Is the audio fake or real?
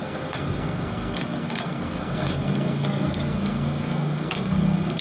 fake